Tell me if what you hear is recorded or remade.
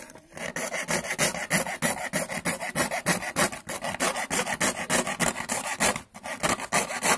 recorded